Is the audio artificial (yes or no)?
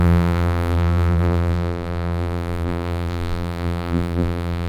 yes